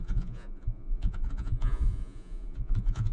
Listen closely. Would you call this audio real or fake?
fake